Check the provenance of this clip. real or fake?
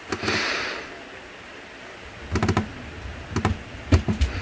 real